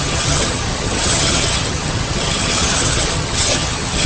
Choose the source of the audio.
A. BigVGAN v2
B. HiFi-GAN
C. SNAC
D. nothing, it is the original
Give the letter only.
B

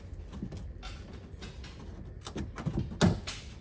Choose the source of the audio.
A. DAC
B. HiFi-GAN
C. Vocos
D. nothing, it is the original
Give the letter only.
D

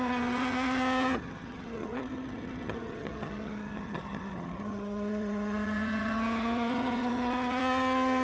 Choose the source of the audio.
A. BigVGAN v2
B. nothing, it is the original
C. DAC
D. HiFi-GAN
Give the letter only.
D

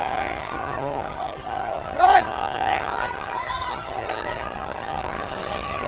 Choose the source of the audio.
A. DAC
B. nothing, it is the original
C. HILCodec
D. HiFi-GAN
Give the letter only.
D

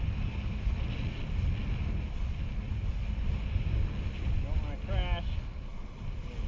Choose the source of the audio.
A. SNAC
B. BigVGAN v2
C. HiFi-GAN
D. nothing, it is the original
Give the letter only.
D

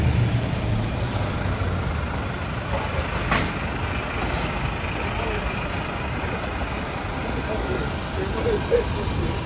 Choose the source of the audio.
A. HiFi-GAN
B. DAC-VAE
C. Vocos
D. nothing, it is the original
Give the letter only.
D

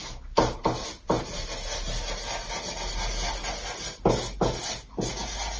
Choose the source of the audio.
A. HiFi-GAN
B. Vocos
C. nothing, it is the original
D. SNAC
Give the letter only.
C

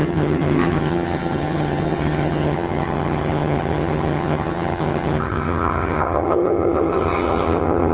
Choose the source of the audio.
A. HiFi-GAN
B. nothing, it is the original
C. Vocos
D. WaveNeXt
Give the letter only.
A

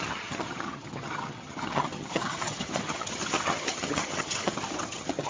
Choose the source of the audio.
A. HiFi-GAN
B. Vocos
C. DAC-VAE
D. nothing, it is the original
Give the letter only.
A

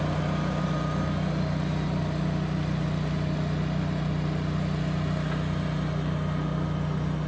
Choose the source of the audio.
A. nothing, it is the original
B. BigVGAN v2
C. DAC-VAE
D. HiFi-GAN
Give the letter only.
A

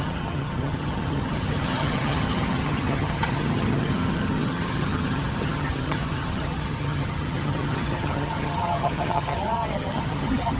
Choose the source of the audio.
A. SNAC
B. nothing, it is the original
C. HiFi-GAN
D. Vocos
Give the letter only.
C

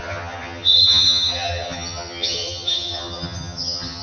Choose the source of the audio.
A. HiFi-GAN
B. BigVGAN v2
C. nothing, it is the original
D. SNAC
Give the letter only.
A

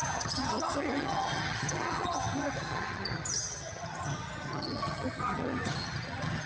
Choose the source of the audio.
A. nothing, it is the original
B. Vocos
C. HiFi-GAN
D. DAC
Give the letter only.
C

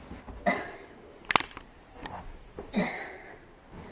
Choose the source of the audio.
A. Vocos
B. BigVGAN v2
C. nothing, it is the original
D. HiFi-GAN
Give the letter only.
C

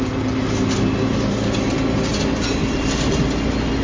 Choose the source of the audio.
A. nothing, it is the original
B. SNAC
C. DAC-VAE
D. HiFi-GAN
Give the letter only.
A